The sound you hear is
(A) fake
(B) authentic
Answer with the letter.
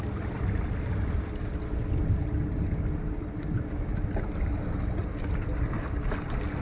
B